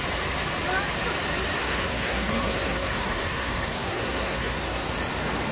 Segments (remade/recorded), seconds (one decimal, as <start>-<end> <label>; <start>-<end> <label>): 0.0-1.6 recorded; 1.6-4.9 remade; 4.9-5.5 recorded